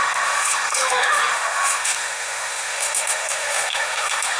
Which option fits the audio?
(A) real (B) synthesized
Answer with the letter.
B